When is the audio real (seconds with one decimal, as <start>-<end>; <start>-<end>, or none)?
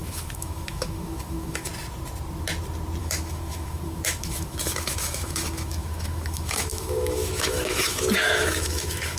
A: 1.7-3.0